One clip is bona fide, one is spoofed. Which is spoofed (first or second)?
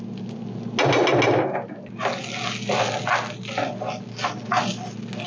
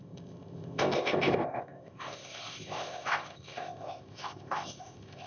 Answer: second